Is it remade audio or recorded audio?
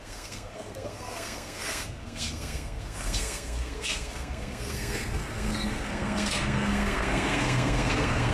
remade